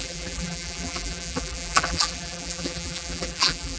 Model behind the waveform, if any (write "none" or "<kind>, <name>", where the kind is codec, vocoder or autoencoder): vocoder, BigVGAN v2